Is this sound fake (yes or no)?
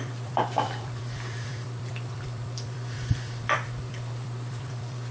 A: yes